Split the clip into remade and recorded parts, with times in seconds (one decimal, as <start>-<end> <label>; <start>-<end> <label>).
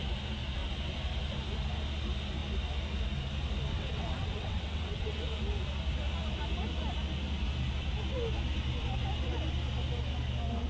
0.0-3.7 recorded; 3.7-5.2 remade; 5.2-10.7 recorded